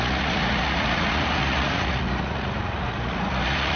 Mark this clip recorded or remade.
remade